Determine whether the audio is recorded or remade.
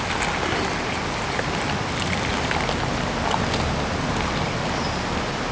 recorded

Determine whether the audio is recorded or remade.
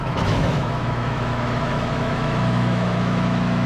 remade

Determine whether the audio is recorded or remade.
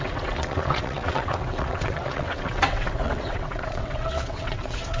remade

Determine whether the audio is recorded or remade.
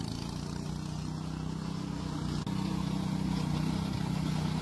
recorded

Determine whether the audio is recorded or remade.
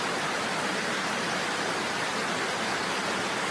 remade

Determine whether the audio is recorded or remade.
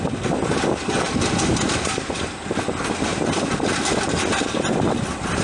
recorded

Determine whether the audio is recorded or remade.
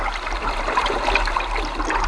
remade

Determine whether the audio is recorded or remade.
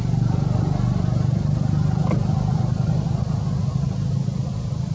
recorded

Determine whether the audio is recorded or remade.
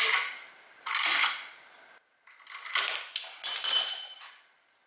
recorded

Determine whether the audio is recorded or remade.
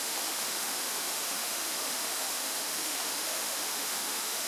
remade